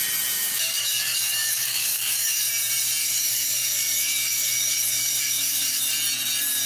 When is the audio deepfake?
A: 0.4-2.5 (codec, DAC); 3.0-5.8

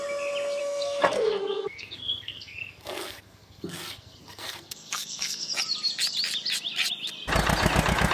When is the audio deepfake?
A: 0.6-5.5 (codec, SNAC)

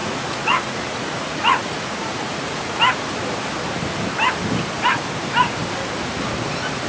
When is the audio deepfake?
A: 0.0-2.8 (vocoder, Vocos)